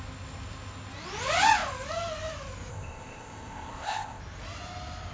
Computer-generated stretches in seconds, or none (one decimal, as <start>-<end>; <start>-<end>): 2.7-4.2

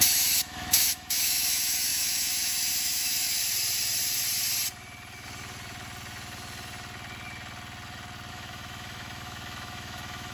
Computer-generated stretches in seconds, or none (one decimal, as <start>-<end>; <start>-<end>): 0.0-3.4; 8.3-10.3

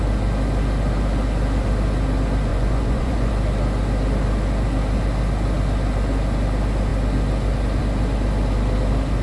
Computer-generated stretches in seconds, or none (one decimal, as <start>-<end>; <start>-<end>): 2.5-3.3